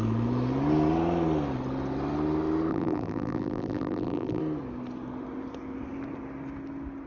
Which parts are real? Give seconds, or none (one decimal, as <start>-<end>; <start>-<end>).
0.0-2.7; 4.4-7.1